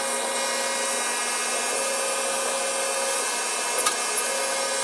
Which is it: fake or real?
real